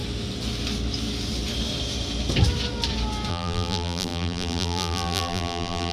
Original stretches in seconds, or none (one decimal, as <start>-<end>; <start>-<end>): 0.0-3.3